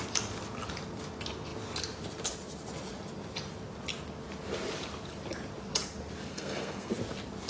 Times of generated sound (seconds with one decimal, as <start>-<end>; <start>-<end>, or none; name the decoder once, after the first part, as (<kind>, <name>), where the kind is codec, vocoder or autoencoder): 6.3-6.9 (codec, SNAC)